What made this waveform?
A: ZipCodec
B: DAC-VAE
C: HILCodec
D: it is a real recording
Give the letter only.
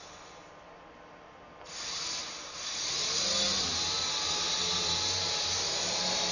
D